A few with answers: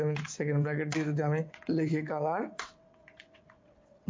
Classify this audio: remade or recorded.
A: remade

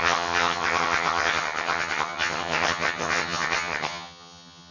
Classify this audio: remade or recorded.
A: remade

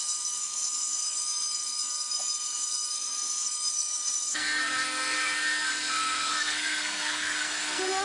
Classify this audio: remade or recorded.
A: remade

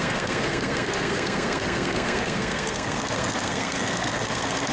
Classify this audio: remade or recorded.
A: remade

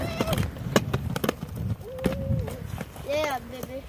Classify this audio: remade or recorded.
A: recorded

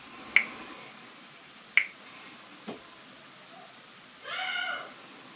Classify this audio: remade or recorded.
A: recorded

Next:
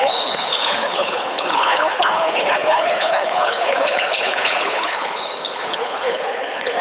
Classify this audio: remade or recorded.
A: remade